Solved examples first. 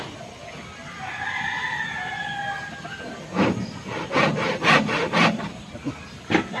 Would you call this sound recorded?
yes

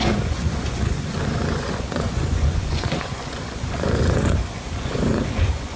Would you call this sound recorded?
no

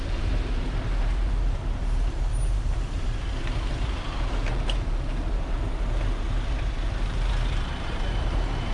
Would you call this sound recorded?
no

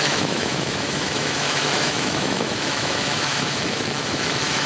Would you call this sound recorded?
no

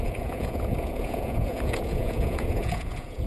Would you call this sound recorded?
no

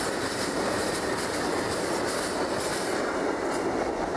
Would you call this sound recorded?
yes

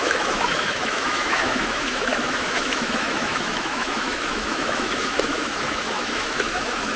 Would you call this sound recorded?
no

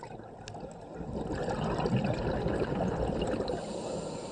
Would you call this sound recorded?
yes